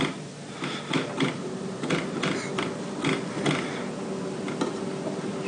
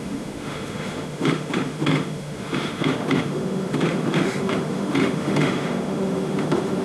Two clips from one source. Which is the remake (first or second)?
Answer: second